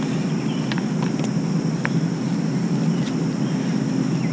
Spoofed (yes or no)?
no